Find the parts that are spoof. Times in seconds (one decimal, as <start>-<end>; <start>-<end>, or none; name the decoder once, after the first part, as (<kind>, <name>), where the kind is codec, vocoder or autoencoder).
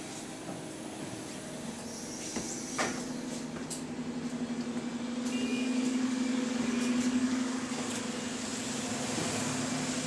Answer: 5.5-8.0 (codec, DAC)